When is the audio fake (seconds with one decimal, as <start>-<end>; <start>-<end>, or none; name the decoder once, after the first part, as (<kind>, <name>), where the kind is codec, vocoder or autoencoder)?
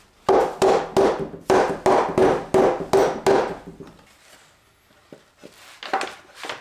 none